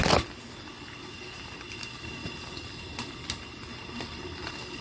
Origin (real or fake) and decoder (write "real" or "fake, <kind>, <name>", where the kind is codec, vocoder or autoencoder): real